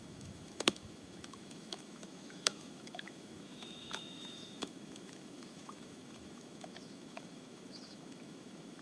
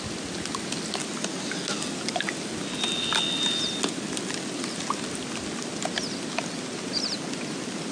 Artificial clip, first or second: first